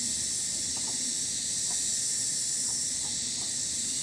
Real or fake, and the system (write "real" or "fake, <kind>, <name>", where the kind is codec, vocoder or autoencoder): real